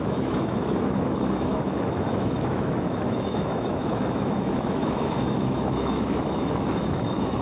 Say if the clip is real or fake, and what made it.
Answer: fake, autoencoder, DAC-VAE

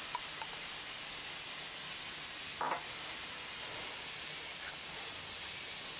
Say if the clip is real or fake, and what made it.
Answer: real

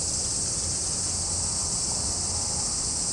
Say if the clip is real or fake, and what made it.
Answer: real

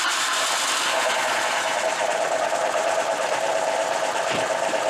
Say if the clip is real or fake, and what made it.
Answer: fake, vocoder, BigVGAN v2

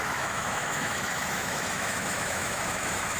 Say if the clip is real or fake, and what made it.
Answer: fake, autoencoder, DAC-VAE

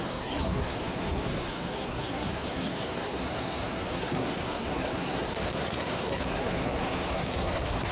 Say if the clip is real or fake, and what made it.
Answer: fake, codec, SNAC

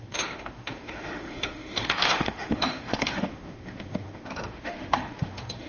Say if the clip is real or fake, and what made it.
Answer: fake, autoencoder, DAC-VAE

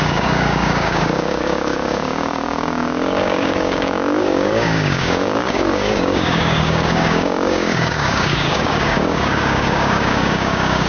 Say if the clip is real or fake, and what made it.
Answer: fake, codec, DAC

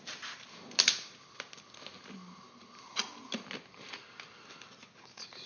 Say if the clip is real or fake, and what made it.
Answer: real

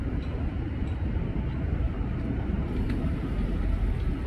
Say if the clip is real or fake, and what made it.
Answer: real